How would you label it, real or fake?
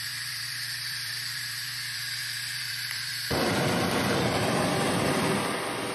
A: fake